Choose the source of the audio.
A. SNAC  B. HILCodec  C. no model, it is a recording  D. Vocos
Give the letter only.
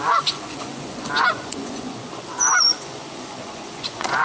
D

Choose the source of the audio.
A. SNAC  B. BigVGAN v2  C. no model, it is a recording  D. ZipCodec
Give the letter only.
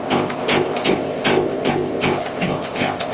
D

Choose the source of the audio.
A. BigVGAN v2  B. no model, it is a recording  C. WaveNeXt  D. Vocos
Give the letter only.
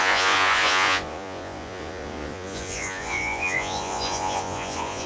D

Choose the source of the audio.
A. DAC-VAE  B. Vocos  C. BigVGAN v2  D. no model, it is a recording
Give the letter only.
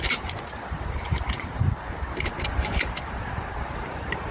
C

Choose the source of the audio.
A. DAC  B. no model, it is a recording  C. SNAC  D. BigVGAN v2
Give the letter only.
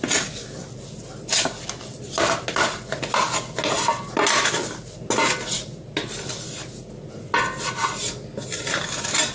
B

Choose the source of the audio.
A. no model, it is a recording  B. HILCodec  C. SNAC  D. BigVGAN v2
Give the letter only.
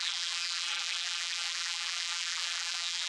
D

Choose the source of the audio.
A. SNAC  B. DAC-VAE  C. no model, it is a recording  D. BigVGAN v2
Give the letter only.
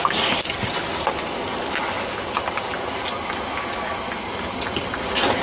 C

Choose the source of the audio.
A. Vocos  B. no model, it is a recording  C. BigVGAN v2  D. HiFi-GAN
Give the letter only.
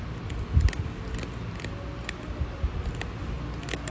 B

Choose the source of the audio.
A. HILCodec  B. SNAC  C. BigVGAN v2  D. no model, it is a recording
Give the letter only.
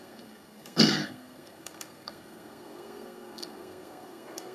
B